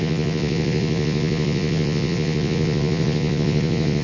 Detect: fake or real fake